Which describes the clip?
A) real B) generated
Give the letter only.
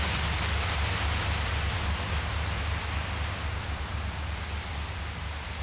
A